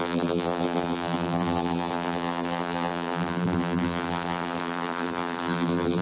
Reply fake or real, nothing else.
fake